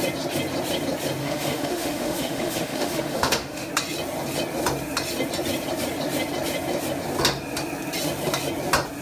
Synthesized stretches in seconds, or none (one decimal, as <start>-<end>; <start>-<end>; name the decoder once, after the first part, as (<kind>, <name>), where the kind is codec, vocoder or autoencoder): 1.2-3.7 (autoencoder, DAC-VAE)